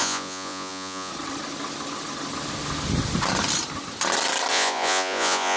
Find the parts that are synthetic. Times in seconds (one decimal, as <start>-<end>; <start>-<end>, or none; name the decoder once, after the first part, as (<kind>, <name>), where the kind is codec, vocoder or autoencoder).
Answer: 0.0-1.1 (vocoder, Vocos); 4.5-5.6